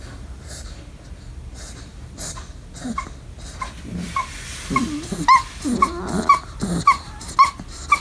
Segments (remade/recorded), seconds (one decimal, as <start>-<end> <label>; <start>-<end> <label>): 0.0-8.0 recorded